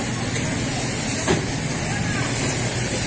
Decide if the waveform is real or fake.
real